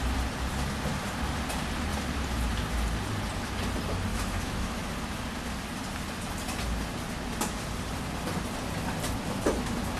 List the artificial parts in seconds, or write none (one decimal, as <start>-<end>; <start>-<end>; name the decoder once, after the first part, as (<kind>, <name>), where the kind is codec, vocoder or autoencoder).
4.1-4.9 (autoencoder, DAC-VAE)